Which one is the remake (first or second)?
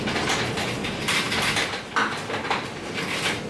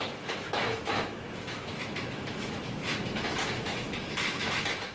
second